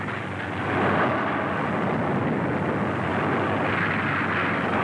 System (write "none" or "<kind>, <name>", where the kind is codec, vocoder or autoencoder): none